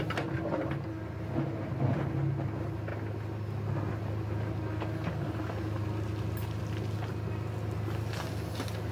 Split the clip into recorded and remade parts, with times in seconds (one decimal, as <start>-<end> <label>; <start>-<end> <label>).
0.0-8.9 recorded